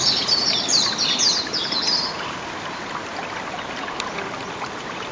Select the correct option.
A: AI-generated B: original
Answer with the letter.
B